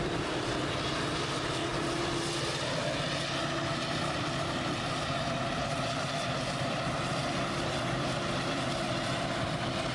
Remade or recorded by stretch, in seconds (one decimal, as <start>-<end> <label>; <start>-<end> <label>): 0.0-9.9 remade